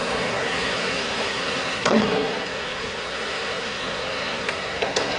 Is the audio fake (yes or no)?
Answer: yes